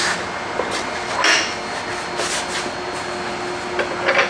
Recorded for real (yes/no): yes